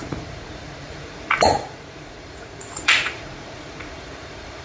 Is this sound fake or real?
fake